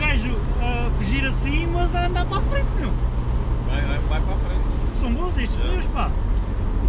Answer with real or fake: real